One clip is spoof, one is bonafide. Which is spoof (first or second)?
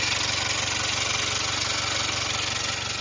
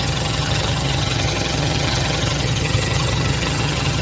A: second